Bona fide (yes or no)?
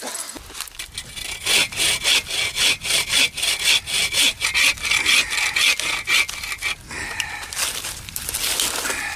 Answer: yes